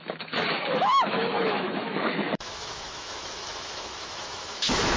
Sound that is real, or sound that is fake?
fake